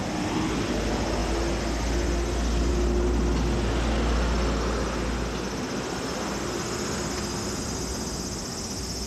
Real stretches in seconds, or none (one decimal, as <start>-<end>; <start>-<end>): 0.0-9.1